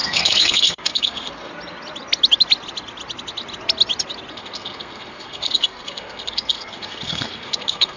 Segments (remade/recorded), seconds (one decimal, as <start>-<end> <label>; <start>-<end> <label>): 0.0-1.5 remade; 1.5-4.3 recorded; 4.3-8.0 remade